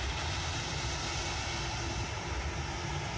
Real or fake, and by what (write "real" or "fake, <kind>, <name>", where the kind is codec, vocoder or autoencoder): real